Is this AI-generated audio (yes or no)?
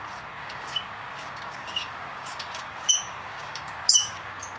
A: yes